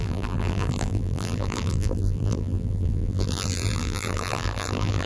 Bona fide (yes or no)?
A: no